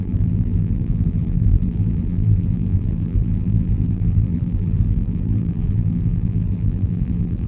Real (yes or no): no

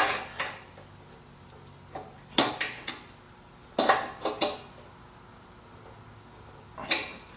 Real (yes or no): yes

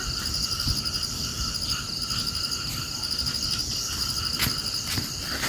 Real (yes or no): yes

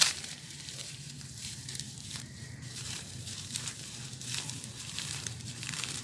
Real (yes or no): no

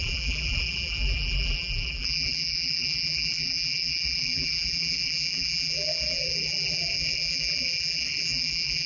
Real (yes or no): no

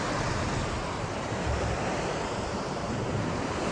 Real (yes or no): no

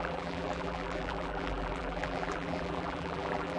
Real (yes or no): no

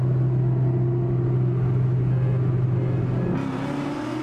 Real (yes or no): yes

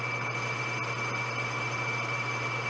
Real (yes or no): yes